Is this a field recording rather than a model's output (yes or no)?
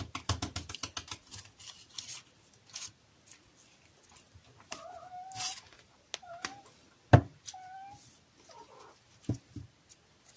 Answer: yes